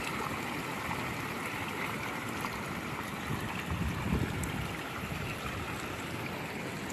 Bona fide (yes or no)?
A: no